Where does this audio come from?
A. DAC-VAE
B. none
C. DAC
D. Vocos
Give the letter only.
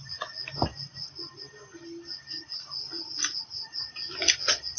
B